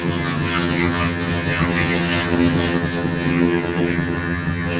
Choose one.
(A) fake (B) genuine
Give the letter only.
A